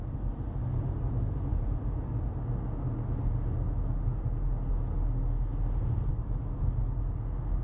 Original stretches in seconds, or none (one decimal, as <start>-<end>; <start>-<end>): 0.0-7.6